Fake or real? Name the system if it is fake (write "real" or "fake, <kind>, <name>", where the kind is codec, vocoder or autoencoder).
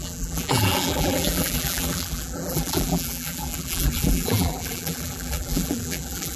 fake, vocoder, BigVGAN v2